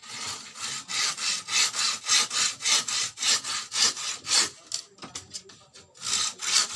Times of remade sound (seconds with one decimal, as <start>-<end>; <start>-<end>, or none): none